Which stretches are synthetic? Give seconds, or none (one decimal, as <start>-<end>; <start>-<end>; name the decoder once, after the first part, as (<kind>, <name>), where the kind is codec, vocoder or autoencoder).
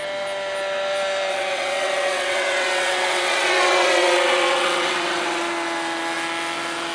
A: 1.3-5.4 (vocoder, WaveNeXt)